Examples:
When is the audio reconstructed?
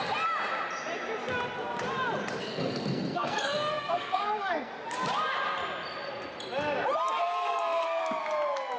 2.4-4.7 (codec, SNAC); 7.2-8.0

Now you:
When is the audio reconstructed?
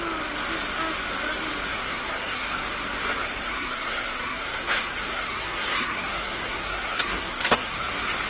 1.7-2.6 (codec, SNAC); 3.2-7.9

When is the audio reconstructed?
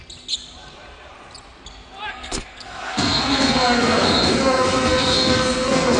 2.1-6.0 (codec, SNAC)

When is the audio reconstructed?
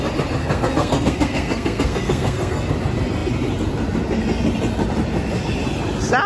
0.4-2.7 (codec, SNAC)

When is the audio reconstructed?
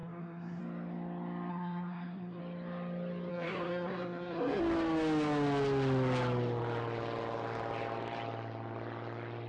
0.0-0.6 (codec, SNAC); 1.5-2.4; 3.3-4.6